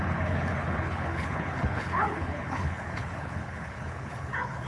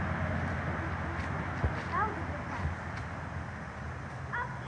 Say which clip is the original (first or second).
second